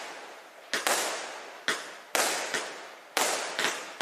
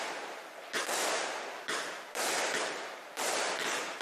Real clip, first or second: first